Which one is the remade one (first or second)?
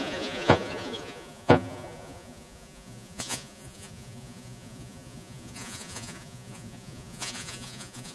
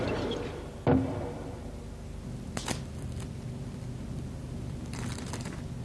first